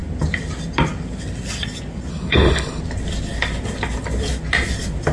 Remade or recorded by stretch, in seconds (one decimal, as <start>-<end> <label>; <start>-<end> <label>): 0.0-2.1 recorded; 2.1-2.8 remade; 2.8-5.1 recorded